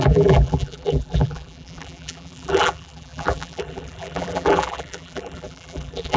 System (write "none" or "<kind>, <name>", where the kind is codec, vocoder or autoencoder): vocoder, BigVGAN v2